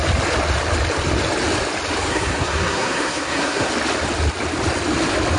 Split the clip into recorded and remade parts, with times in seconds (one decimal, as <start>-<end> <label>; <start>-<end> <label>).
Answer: 0.0-2.1 recorded; 2.1-3.7 remade; 3.7-5.4 recorded

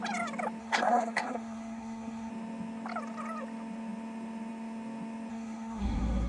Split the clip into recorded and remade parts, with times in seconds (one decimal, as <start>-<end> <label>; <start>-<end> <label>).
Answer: 0.0-0.6 recorded; 0.6-2.3 remade; 2.3-5.3 recorded; 5.3-6.3 remade

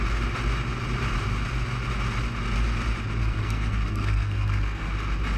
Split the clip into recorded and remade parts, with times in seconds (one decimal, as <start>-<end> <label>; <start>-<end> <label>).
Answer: 0.0-3.2 recorded; 3.2-4.9 remade; 4.9-5.4 recorded

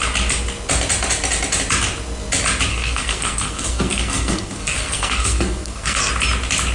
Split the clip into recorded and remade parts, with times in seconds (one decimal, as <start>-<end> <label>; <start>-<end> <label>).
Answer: 0.0-2.7 recorded; 2.7-6.1 remade; 6.1-6.7 recorded

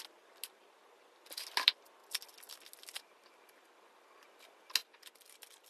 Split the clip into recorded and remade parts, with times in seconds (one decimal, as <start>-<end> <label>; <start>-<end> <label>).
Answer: 0.0-5.7 recorded

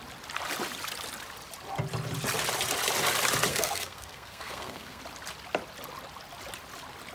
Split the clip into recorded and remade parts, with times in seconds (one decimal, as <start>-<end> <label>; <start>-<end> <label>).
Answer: 0.0-3.5 recorded; 3.5-5.0 remade; 5.0-7.1 recorded

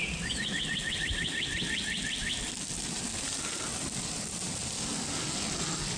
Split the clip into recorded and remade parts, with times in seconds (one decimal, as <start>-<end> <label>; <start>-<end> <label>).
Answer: 0.0-6.0 recorded